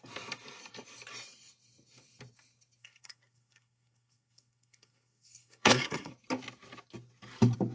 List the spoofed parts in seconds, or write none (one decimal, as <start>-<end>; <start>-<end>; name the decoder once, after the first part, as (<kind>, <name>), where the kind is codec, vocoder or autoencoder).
2.8-6.1 (codec, SNAC)